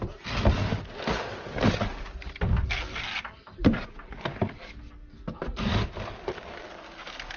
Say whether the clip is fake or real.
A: real